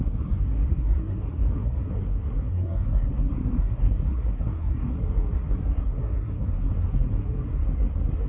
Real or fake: fake